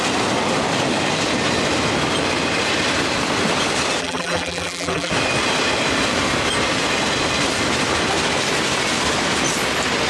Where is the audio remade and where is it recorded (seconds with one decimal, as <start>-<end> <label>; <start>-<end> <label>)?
0.0-4.0 recorded; 4.0-5.1 remade; 5.1-10.1 recorded

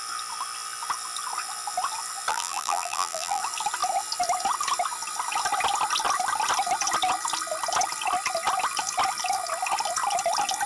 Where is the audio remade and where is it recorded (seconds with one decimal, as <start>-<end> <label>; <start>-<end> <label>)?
0.0-2.3 recorded; 2.3-3.4 remade; 3.4-10.7 recorded

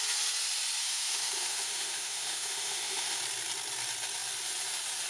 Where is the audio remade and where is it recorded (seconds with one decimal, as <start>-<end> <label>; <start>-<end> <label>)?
0.0-0.8 recorded; 0.8-3.2 remade; 3.2-5.1 recorded

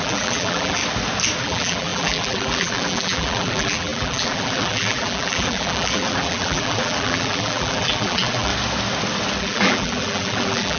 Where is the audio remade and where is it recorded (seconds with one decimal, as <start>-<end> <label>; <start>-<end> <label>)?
0.0-0.8 remade; 0.8-1.4 recorded; 1.4-8.5 remade; 8.5-9.4 recorded; 9.4-10.8 remade

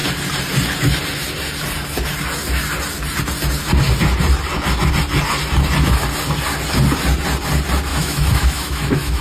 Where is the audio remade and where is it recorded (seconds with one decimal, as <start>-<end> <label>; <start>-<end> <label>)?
0.0-7.9 recorded; 7.9-9.2 remade

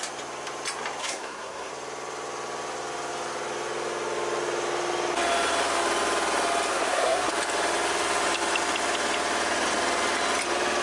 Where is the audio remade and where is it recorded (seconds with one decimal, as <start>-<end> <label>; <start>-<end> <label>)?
0.0-1.0 recorded; 1.0-1.7 remade; 1.7-6.7 recorded; 6.7-7.3 remade; 7.3-10.8 recorded